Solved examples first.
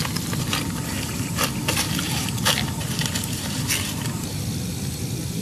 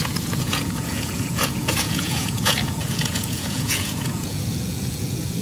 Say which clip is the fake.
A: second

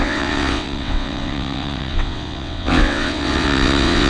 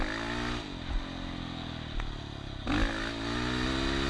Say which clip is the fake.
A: first